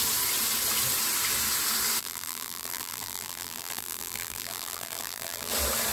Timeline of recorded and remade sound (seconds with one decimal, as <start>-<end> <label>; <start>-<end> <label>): 0.0-2.0 recorded; 2.0-5.5 remade; 5.5-5.9 recorded